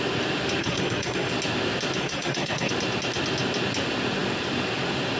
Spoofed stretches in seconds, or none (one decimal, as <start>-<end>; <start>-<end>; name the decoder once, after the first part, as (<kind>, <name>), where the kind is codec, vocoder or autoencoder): 0.6-1.3 (codec, SNAC); 2.0-2.7